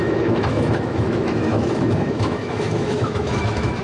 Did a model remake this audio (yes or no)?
yes